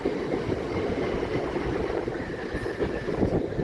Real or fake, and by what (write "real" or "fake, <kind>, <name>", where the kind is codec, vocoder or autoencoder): real